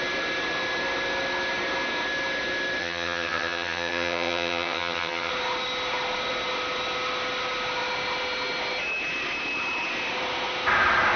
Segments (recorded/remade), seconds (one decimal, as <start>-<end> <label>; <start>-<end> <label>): 0.0-2.8 recorded; 2.8-5.3 remade; 5.3-11.2 recorded